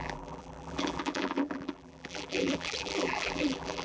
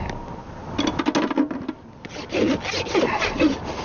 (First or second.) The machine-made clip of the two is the first